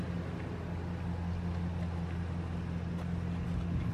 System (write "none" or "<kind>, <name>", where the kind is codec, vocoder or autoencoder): none